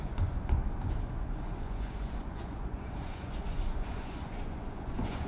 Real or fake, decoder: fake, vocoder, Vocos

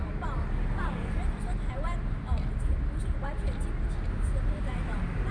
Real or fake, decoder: real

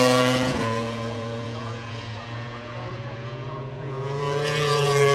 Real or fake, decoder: fake, vocoder, Vocos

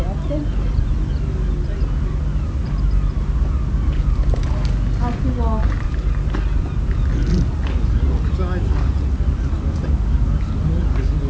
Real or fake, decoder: real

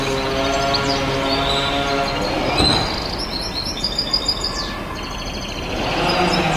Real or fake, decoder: real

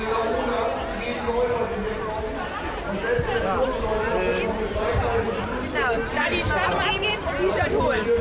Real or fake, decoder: real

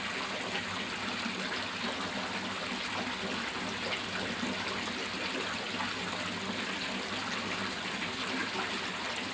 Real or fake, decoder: real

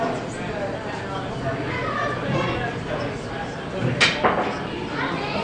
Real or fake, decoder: real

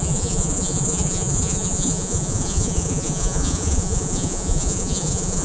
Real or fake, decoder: fake, vocoder, Vocos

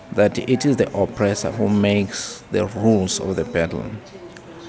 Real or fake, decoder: real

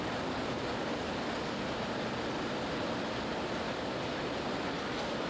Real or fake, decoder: real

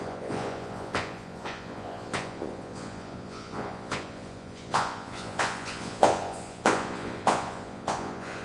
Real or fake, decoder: fake, vocoder, Vocos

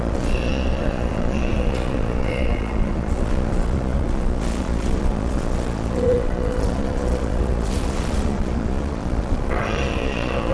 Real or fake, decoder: fake, vocoder, Vocos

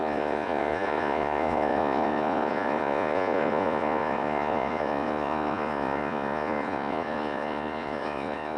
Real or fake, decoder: fake, vocoder, Vocos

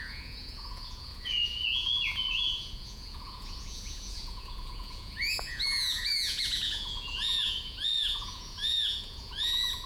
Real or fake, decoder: fake, vocoder, Vocos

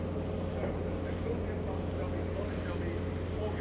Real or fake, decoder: real